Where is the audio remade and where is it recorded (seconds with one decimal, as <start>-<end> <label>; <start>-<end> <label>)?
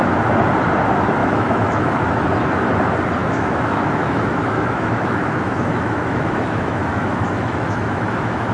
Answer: 0.0-1.2 recorded; 1.2-2.3 remade; 2.3-3.2 recorded; 3.2-8.5 remade